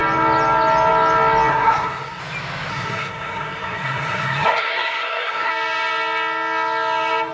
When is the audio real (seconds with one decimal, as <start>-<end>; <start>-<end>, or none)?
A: 0.0-1.5; 2.2-2.7; 5.5-7.3